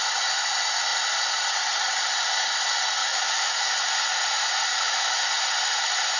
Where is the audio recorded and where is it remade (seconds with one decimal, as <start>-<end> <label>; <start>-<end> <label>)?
0.0-3.0 recorded; 3.0-3.7 remade; 3.7-4.7 recorded; 4.7-5.2 remade; 5.2-6.2 recorded